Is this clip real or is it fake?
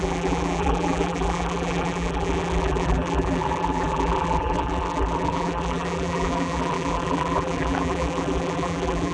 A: fake